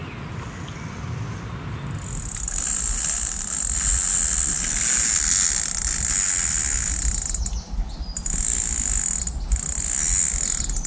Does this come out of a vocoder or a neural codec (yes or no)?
no